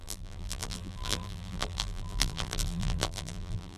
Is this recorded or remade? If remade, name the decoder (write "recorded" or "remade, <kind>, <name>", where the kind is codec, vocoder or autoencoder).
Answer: remade, vocoder, BigVGAN v2